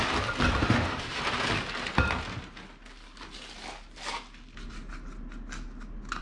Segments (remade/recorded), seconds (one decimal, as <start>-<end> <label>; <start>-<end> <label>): 0.0-0.6 recorded; 0.6-1.2 remade; 1.2-6.2 recorded